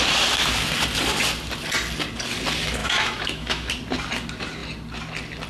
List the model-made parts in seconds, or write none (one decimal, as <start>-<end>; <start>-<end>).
2.8-3.7